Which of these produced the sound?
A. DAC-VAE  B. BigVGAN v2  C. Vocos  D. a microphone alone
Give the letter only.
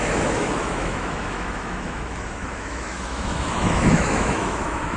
A